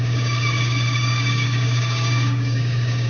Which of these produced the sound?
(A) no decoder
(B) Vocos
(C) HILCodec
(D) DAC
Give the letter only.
D